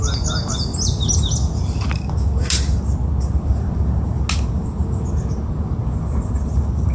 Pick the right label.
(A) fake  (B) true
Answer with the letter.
B